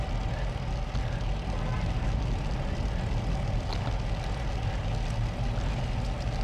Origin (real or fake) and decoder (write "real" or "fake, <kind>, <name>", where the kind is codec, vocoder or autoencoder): real